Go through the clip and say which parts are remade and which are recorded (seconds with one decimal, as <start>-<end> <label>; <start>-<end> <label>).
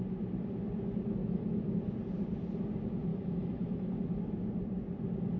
0.0-1.2 recorded; 1.2-1.7 remade; 1.7-3.1 recorded; 3.1-3.9 remade; 3.9-5.4 recorded